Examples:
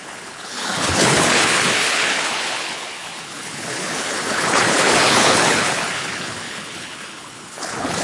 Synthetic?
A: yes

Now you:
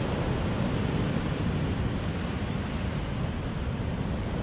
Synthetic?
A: no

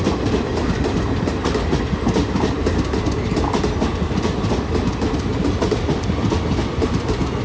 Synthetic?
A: no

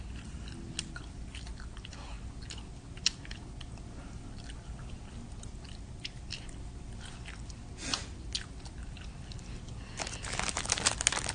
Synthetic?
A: no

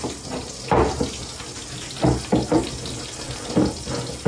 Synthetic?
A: no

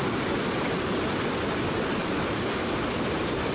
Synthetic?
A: no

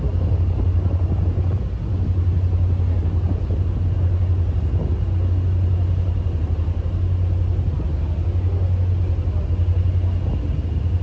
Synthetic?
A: no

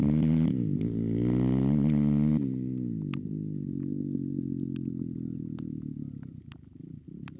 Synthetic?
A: no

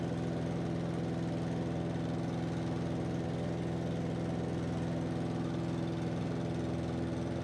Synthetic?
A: no